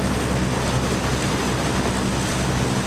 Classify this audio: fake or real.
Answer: real